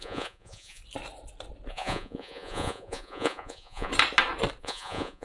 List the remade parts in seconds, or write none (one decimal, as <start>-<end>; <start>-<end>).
0.0-0.8; 1.7-3.9; 4.6-5.2